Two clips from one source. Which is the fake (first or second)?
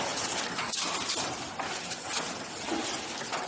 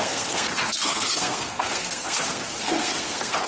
second